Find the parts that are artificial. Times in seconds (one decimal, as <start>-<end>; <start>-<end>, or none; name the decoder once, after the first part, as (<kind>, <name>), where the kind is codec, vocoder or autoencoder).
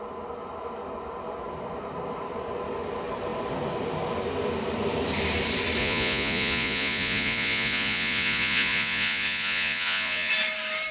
5.8-10.3 (vocoder, Vocos)